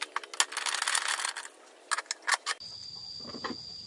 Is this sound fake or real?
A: real